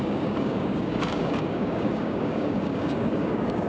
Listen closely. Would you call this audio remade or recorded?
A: remade